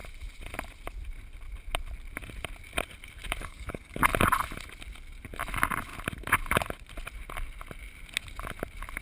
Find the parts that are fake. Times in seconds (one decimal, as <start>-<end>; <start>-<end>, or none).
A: 3.4-4.0